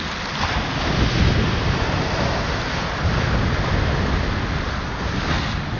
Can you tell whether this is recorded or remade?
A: recorded